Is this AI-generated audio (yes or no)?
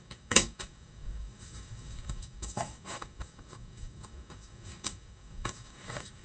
yes